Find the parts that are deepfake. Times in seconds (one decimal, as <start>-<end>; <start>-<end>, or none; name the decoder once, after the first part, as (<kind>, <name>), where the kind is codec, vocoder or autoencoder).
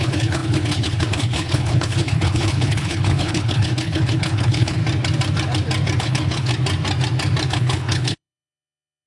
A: 0.0-4.8 (codec, HILCodec); 6.0-6.5; 7.5-9.1